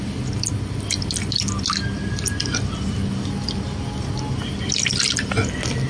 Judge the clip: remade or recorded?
recorded